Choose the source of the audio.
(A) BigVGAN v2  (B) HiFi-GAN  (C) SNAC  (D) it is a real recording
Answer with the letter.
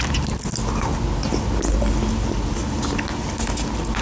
D